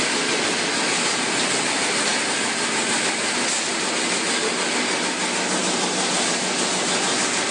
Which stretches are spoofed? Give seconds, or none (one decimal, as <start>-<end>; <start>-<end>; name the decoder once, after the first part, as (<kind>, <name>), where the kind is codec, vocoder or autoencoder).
none